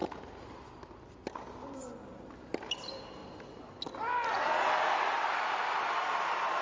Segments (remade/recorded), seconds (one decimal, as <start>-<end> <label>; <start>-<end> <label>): 0.0-6.6 recorded